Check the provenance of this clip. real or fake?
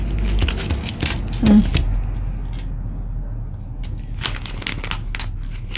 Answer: real